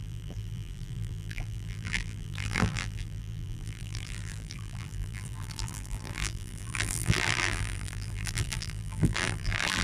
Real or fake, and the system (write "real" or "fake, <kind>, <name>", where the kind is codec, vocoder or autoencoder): fake, vocoder, BigVGAN v2